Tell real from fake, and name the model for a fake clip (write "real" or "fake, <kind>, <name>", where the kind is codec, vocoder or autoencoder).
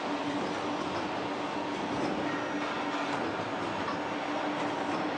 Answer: real